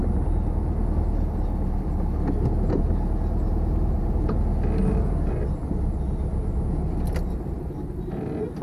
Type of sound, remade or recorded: recorded